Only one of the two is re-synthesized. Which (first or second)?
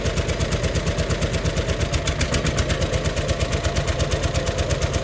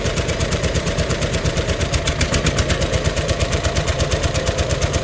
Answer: second